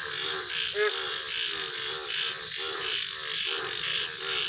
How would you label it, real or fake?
real